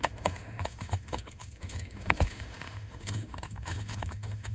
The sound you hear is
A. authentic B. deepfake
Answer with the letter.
B